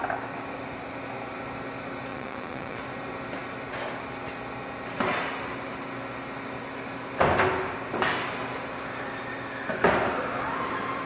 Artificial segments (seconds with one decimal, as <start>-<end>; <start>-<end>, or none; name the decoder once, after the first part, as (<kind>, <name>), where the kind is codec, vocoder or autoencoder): 2.1-2.8 (vocoder, Vocos)